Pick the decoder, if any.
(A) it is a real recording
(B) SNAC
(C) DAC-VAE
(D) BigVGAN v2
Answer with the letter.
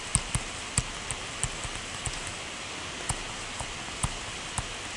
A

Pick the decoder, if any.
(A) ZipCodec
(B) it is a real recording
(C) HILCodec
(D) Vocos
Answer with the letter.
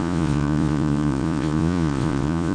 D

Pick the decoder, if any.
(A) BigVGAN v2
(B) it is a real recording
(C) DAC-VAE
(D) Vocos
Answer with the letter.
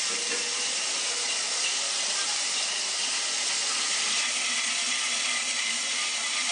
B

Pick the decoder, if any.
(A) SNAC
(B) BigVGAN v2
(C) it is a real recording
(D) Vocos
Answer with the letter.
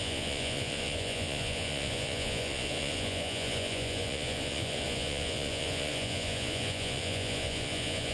D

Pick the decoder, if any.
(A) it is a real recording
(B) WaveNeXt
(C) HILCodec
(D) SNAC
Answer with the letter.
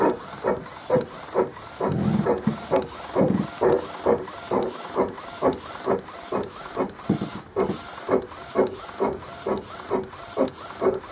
A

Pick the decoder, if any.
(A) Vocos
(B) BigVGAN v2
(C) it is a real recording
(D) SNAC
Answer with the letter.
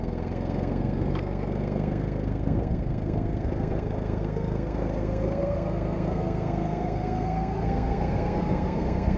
D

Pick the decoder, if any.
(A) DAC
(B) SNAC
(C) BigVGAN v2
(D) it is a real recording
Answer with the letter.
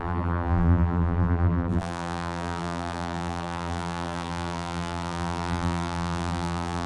C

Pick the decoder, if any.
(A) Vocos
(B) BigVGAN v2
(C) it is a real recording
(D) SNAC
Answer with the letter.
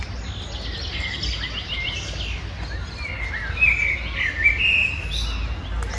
C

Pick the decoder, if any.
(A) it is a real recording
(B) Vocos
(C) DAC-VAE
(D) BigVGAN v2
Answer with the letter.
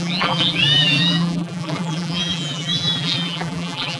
D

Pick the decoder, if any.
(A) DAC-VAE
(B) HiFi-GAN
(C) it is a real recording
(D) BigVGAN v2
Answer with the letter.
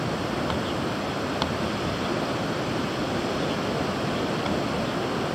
C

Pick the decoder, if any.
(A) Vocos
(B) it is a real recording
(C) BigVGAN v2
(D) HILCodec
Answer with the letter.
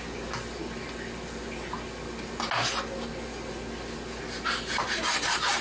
B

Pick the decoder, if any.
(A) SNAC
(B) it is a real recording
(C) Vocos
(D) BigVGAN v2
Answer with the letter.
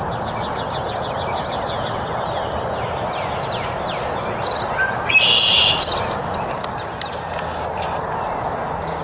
B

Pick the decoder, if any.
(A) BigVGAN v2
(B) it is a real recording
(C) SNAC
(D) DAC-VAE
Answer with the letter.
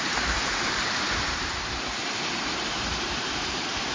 A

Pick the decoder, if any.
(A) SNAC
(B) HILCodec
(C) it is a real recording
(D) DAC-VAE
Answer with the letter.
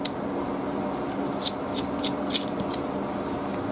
C